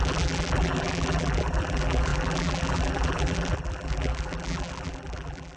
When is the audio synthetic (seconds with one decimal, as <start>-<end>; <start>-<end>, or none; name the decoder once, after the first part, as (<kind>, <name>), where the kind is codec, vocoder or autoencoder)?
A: 0.0-5.6 (vocoder, BigVGAN v2)